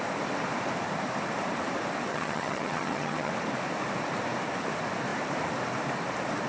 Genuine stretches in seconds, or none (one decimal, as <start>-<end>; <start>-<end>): 0.0-2.1; 3.3-6.5